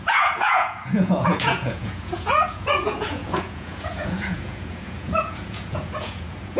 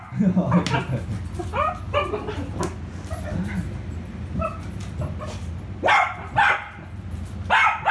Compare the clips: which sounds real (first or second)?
second